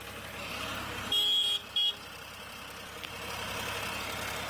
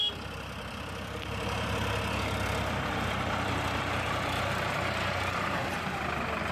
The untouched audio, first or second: first